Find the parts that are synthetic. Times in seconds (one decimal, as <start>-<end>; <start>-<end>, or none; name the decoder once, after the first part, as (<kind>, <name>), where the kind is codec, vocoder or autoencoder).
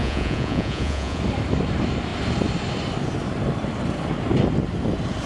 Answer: 0.0-1.2 (vocoder, Vocos)